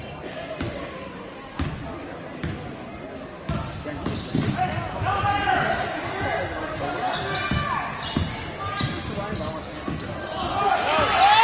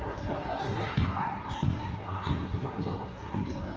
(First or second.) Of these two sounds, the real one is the first